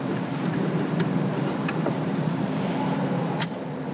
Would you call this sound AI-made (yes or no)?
yes